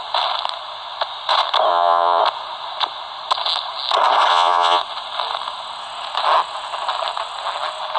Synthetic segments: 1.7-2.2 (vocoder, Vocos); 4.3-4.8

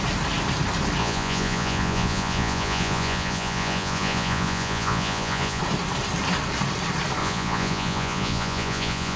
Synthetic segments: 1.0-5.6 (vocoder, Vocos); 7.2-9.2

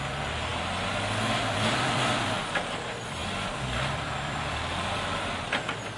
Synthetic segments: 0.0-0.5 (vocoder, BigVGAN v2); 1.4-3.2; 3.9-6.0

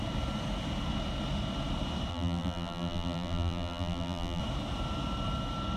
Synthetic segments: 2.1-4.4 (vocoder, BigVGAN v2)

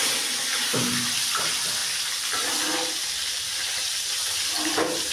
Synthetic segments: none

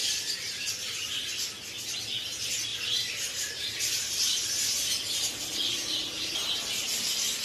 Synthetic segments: 2.7-4.9 (vocoder, BigVGAN v2); 6.0-6.9

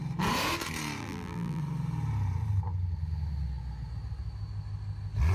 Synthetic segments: 1.0-1.6 (vocoder, BigVGAN v2)

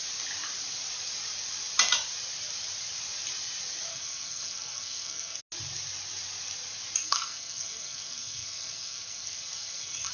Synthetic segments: 3.9-5.4 (codec, SNAC); 7.0-10.1